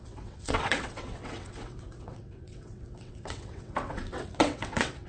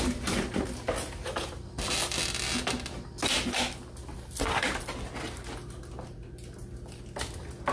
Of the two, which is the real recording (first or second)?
second